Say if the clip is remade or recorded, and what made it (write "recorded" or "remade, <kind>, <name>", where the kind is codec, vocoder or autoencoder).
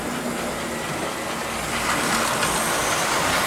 recorded